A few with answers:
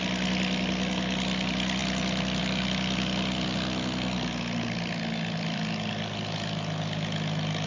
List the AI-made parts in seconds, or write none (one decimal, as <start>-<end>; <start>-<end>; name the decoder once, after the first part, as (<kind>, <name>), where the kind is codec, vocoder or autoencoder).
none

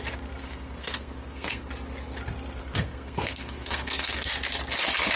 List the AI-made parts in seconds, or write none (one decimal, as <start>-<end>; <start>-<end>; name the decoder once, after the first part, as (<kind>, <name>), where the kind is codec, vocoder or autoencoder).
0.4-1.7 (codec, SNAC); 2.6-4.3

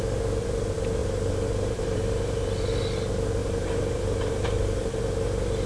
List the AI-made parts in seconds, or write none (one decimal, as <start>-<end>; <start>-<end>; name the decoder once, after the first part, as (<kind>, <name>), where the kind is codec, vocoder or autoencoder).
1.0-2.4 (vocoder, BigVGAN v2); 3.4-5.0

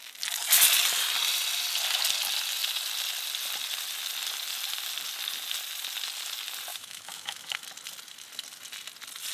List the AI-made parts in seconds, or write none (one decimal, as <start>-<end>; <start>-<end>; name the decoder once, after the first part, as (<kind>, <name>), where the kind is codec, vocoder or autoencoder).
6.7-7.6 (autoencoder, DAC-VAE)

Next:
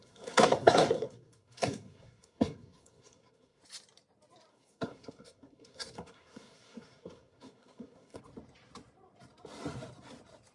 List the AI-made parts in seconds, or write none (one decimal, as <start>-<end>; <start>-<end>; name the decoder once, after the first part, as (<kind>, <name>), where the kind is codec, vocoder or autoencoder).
0.0-3.6 (codec, SNAC); 4.5-8.2

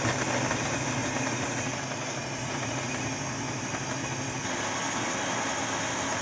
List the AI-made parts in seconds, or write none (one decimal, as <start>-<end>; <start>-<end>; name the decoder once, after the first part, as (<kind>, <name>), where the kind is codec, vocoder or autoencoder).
1.0-1.8 (vocoder, Vocos); 2.4-2.9

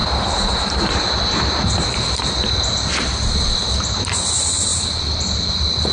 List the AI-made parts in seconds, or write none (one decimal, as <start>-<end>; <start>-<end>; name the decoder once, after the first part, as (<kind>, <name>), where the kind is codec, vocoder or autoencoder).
0.0-3.5 (vocoder, BigVGAN v2); 4.7-5.9

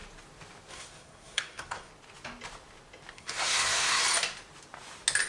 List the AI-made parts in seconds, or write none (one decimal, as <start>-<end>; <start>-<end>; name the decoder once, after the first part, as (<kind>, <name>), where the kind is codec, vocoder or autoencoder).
0.7-1.9 (codec, SNAC); 3.1-4.0